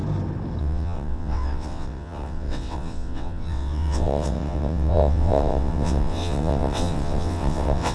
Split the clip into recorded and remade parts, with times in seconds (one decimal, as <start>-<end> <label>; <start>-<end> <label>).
0.0-0.6 recorded; 0.6-7.9 remade